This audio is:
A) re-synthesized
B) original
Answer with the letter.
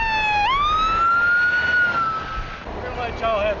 B